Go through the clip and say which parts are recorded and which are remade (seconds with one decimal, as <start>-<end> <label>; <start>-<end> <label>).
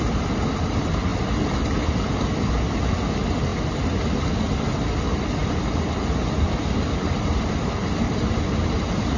0.0-9.2 recorded